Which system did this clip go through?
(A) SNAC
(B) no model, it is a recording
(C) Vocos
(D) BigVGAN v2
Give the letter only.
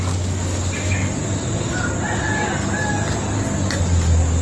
B